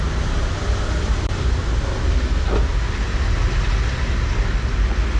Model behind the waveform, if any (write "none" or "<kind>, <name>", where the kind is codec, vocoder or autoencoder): none